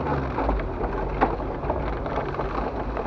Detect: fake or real real